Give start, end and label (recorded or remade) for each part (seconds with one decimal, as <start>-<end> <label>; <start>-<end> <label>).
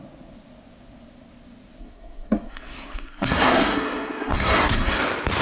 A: 0.0-1.8 recorded; 1.8-5.0 remade; 5.0-5.4 recorded